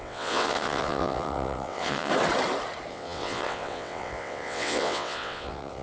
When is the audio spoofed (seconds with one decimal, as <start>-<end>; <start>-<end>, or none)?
0.0-2.1; 2.9-5.8

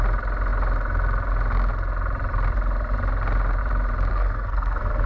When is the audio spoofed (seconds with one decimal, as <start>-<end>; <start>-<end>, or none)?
4.1-5.1